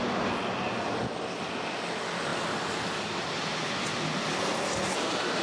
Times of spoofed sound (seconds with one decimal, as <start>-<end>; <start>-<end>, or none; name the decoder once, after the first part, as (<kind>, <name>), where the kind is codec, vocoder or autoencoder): none

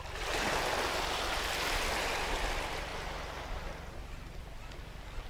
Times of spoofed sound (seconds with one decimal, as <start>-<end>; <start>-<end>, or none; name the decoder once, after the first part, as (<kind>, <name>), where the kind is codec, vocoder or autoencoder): none

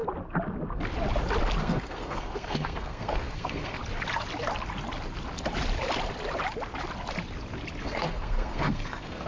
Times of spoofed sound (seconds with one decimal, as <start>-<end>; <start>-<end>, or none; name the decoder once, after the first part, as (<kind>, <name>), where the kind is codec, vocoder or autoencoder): 1.6-3.8 (codec, SNAC); 7.8-9.3

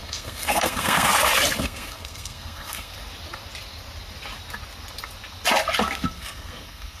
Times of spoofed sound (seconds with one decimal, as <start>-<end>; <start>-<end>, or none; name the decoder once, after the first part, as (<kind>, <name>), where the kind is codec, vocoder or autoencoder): 0.0-1.1 (codec, SNAC); 1.6-2.9; 5.8-7.0

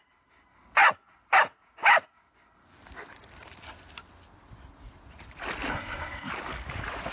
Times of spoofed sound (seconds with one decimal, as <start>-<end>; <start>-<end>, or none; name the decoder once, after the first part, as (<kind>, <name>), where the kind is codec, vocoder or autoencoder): 5.7-6.3 (codec, SNAC)

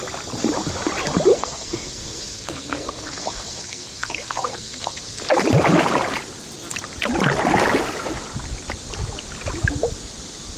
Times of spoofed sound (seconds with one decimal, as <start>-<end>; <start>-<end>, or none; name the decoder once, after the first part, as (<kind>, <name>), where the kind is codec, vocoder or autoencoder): 1.3-5.2 (codec, SNAC)

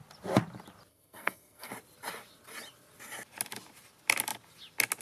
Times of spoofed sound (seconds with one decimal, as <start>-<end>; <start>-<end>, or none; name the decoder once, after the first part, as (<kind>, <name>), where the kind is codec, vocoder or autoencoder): 0.9-1.7 (codec, SNAC)